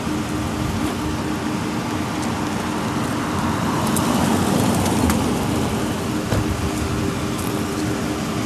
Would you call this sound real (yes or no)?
yes